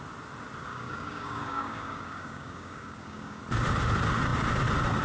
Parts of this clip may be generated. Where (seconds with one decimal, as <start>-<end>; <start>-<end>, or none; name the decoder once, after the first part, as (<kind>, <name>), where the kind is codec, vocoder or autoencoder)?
0.7-3.4 (codec, DAC)